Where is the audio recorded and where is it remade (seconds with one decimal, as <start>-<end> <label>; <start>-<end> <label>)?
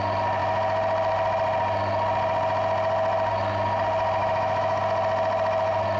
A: 0.0-4.2 recorded; 4.2-4.8 remade; 4.8-6.0 recorded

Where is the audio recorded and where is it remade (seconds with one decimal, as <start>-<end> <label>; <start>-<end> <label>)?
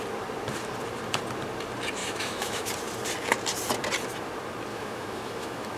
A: 0.0-2.0 recorded; 2.0-2.7 remade; 2.7-4.7 recorded; 4.7-5.8 remade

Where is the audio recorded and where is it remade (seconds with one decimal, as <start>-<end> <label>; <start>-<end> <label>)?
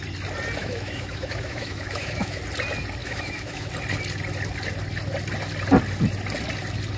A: 0.0-0.6 recorded; 0.6-2.4 remade; 2.4-3.0 recorded; 3.0-3.7 remade; 3.7-7.0 recorded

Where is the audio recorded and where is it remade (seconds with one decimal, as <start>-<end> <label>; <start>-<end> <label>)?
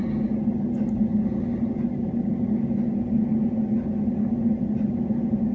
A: 0.0-5.5 recorded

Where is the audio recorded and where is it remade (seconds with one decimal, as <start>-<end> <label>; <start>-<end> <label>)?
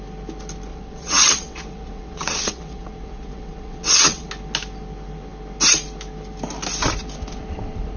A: 0.0-0.7 recorded; 0.7-4.3 remade; 4.3-8.0 recorded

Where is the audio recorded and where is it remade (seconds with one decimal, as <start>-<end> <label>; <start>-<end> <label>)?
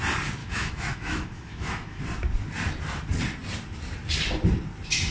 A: 0.0-0.4 recorded; 0.4-2.0 remade; 2.0-5.1 recorded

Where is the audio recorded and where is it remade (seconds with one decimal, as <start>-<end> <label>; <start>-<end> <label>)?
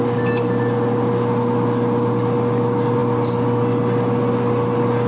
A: 0.0-5.1 recorded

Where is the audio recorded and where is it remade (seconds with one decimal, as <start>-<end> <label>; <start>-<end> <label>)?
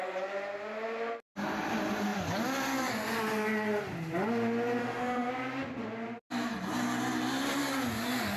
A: 0.0-4.8 recorded; 4.8-5.3 remade; 5.3-8.4 recorded